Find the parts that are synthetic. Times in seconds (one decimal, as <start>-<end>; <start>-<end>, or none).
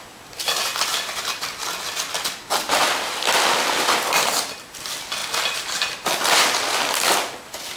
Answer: none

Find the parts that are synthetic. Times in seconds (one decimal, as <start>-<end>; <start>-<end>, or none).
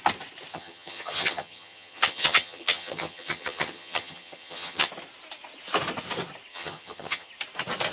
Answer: 0.5-4.9; 6.5-7.3